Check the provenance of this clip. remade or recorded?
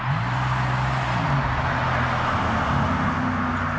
recorded